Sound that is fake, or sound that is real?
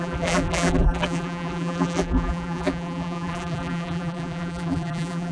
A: fake